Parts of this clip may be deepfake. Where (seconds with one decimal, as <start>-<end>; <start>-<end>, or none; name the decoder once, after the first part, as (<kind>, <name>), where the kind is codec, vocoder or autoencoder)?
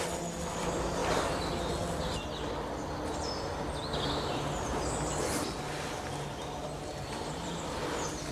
none